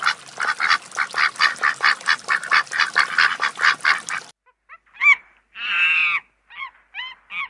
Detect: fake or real real